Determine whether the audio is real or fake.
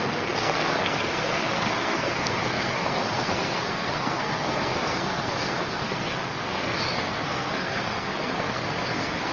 fake